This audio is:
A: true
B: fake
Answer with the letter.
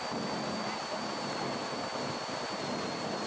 A